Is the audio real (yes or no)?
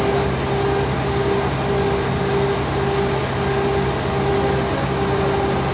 yes